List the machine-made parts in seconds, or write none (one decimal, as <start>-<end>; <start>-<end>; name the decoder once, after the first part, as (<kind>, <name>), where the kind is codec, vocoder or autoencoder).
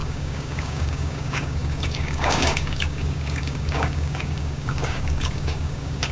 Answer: 0.0-6.1 (codec, DAC)